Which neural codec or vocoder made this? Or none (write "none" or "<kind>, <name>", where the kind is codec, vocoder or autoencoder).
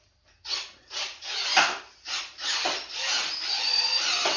none